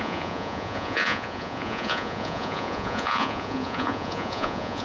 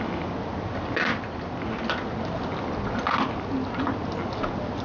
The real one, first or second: second